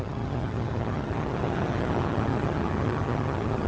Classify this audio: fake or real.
fake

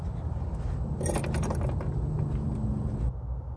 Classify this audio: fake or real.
real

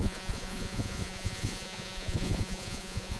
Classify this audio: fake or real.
fake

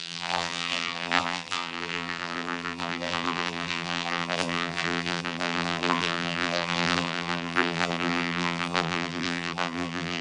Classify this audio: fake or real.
fake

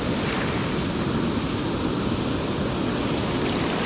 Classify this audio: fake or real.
real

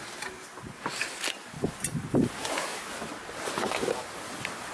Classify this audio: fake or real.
real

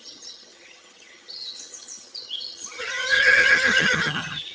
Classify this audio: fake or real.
fake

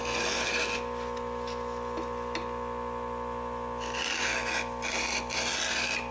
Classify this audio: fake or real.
real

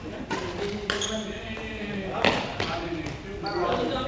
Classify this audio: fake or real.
real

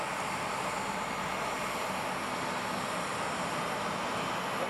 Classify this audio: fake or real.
real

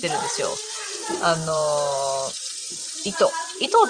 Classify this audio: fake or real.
fake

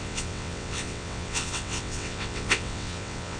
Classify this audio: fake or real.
fake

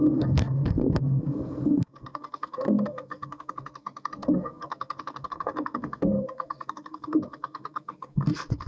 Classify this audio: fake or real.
fake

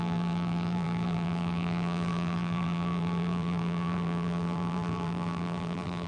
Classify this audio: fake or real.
fake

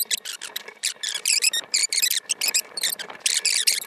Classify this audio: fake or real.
fake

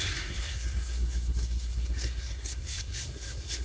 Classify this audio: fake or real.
fake